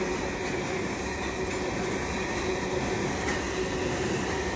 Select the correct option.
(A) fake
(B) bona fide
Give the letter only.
B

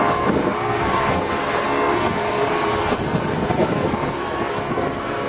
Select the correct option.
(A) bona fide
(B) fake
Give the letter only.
B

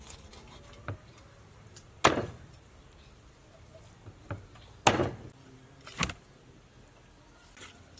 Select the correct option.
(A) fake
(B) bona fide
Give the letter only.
B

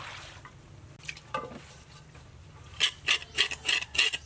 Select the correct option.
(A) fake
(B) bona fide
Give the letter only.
B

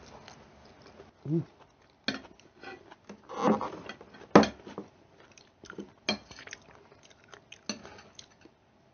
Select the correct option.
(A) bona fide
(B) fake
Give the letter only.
A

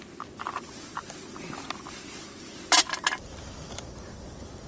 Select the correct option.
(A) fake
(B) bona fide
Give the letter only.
B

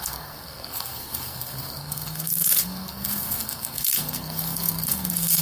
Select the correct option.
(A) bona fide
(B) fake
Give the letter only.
B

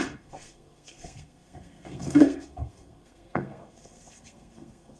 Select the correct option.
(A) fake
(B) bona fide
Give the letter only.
A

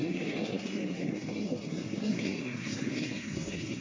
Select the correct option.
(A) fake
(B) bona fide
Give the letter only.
A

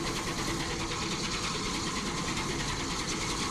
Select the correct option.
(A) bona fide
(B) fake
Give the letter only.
A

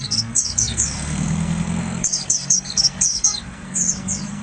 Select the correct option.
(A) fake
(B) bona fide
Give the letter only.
A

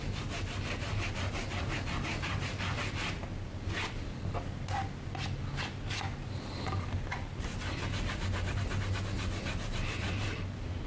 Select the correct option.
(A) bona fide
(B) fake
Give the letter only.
A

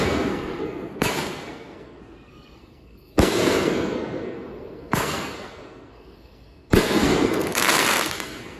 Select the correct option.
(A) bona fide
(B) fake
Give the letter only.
B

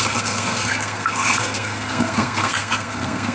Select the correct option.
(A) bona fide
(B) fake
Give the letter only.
B